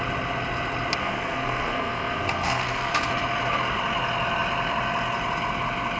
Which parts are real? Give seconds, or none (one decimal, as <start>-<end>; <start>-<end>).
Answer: 0.0-1.0; 3.1-6.0